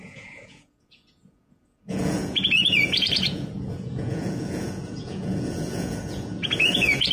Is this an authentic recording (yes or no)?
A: no